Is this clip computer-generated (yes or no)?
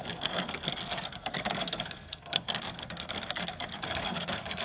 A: yes